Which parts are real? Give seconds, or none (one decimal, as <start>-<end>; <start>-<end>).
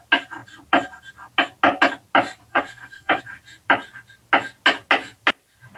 0.0-2.5; 3.2-5.8